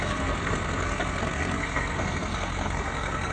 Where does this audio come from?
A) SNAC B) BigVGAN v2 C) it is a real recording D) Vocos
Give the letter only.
A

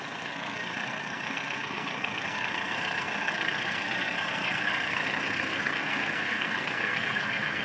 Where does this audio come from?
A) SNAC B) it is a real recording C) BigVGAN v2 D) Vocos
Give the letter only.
A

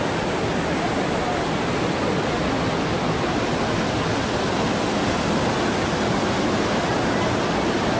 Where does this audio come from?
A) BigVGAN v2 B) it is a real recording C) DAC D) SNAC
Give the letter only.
B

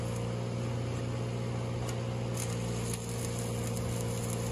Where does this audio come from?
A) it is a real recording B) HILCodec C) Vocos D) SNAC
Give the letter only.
A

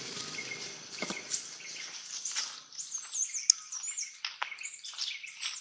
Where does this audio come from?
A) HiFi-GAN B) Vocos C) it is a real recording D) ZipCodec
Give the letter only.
C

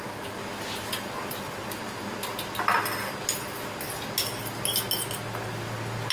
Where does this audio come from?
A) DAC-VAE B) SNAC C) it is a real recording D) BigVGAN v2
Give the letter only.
C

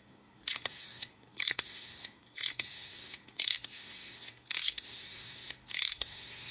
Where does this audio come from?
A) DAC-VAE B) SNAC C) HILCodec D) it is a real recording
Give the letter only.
B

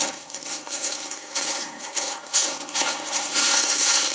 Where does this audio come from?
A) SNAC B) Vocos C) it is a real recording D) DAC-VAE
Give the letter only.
A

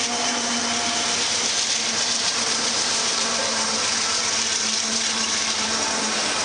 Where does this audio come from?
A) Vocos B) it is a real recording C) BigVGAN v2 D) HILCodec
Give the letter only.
C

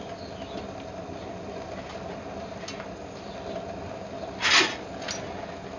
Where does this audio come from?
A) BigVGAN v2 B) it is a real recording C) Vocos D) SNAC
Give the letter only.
B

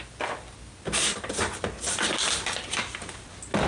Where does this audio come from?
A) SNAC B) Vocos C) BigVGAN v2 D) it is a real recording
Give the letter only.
D